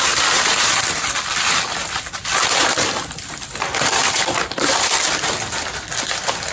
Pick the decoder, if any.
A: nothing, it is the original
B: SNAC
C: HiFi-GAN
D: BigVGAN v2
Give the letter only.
D